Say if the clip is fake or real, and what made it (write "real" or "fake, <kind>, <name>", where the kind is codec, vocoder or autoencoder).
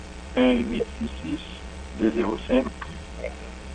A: fake, vocoder, Vocos